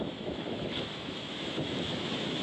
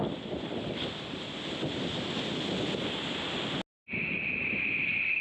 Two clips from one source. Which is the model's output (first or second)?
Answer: first